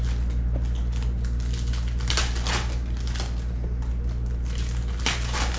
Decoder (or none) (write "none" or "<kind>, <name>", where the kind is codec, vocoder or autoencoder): none